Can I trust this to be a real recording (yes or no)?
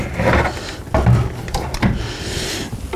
yes